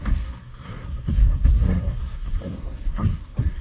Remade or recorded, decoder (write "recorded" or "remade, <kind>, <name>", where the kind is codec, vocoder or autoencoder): remade, codec, SNAC